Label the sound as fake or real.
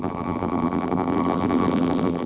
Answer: fake